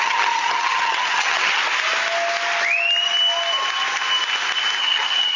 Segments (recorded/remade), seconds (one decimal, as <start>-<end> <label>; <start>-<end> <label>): 0.0-1.6 remade; 1.6-4.8 recorded; 4.8-5.4 remade